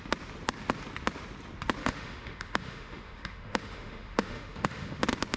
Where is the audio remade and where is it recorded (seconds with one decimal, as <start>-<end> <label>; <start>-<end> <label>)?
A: 0.0-1.8 recorded; 1.8-5.0 remade; 5.0-5.4 recorded